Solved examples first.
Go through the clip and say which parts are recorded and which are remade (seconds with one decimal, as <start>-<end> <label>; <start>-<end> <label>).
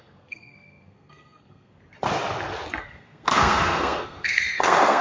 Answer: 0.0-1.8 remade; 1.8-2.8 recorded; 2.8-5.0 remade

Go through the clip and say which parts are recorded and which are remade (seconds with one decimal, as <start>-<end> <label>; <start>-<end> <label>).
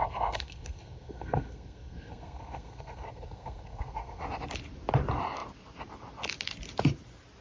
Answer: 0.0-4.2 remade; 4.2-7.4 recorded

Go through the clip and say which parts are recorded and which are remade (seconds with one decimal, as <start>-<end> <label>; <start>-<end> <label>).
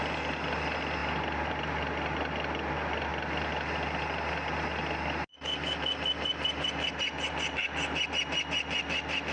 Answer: 0.0-9.3 recorded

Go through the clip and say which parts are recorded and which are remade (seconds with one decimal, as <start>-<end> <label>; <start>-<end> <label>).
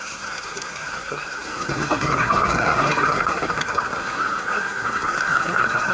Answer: 0.0-5.9 remade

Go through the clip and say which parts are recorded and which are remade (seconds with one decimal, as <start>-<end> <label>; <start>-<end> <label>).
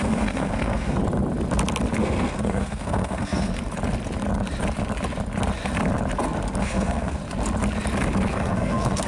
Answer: 0.0-1.0 remade; 1.0-2.0 recorded; 2.0-3.5 remade; 3.5-6.6 recorded; 6.6-7.2 remade; 7.2-8.3 recorded; 8.3-9.1 remade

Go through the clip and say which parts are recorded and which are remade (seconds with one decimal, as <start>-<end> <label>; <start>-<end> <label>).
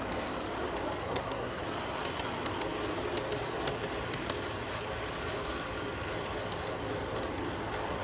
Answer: 0.0-1.0 recorded; 1.0-1.6 remade; 1.6-8.0 recorded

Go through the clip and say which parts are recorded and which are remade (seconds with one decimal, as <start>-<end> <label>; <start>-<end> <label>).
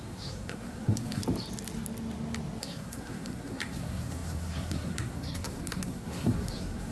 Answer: 0.0-1.2 remade; 1.2-2.6 recorded; 2.6-6.9 remade